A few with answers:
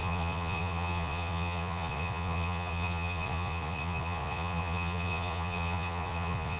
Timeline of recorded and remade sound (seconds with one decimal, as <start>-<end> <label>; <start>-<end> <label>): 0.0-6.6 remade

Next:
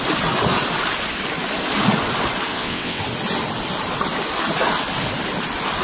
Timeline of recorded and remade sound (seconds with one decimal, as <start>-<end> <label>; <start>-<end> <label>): 0.0-2.5 recorded; 2.5-3.0 remade; 3.0-5.8 recorded

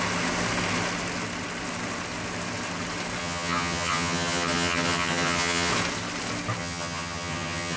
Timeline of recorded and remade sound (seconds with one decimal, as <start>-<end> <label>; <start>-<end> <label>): 0.0-3.2 recorded; 3.2-5.7 remade; 5.7-6.6 recorded; 6.6-7.8 remade

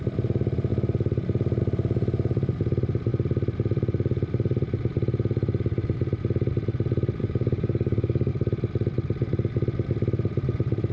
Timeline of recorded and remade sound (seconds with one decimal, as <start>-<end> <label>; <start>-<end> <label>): 0.0-7.2 recorded; 7.2-8.3 remade; 8.3-10.9 recorded